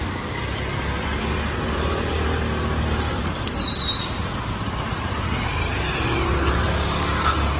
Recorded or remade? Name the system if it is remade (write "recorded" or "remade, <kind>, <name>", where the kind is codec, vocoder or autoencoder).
recorded